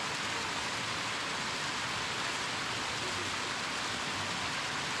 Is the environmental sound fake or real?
real